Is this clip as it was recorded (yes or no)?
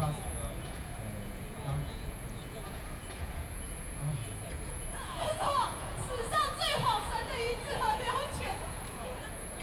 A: no